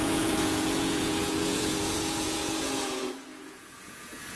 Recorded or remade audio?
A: remade